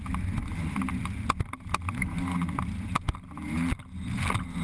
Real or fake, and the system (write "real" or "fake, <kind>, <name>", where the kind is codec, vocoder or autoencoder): real